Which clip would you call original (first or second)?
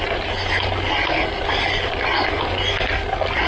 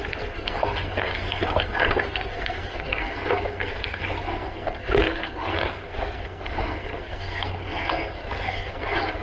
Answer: first